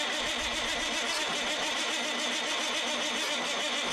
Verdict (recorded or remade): recorded